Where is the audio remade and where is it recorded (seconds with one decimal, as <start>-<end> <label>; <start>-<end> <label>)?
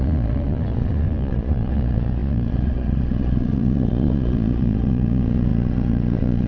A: 0.0-6.5 remade